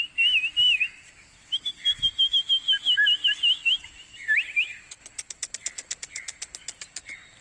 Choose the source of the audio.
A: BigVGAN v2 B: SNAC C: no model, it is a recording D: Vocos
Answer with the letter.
C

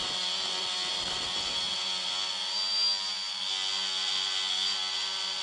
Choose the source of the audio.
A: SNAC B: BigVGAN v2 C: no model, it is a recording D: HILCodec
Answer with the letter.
C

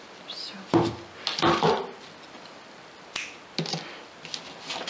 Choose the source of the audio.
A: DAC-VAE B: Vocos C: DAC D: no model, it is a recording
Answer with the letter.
D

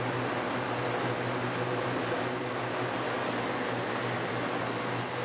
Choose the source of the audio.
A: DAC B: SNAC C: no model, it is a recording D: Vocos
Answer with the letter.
C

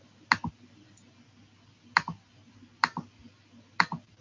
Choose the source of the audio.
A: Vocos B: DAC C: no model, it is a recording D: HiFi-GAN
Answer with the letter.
C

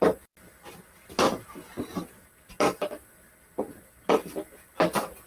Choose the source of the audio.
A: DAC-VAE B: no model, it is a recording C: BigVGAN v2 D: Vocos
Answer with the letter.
B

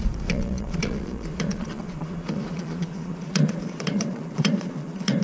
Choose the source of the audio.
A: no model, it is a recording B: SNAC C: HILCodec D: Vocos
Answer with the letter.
D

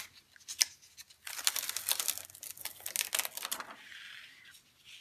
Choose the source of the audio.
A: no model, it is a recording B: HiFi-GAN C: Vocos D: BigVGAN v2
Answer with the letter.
A